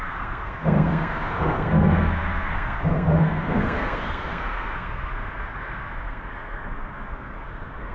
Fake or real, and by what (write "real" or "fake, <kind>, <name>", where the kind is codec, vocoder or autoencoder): fake, codec, SNAC